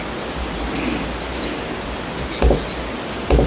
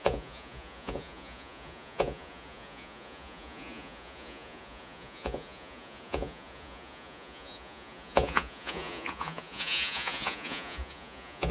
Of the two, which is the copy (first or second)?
second